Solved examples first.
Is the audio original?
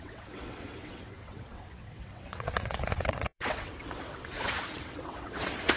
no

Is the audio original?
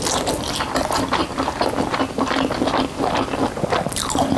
yes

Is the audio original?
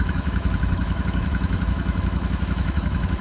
no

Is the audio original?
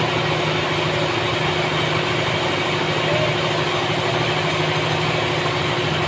yes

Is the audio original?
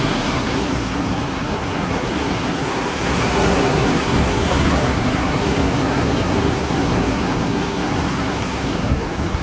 no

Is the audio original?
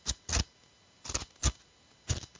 yes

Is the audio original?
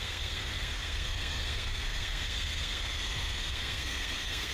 no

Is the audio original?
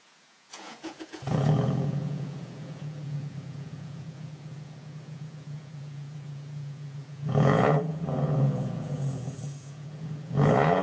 no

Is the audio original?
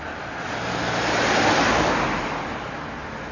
yes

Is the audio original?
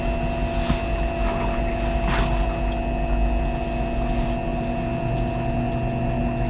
yes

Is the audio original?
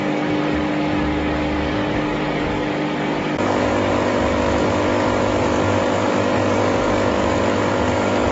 no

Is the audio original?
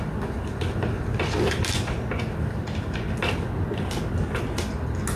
yes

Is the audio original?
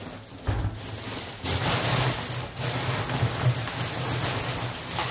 yes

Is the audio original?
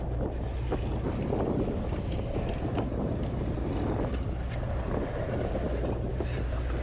yes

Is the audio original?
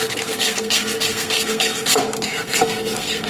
no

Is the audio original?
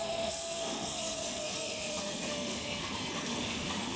no